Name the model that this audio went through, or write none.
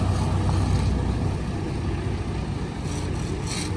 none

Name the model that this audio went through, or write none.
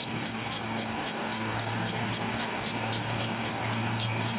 codec, DAC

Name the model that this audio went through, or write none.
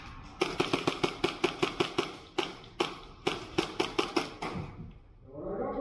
none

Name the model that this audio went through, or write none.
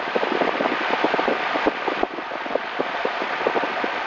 none